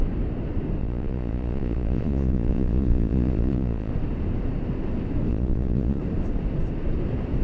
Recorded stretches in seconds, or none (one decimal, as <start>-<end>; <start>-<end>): 0.0-0.8; 3.9-5.3; 6.0-7.4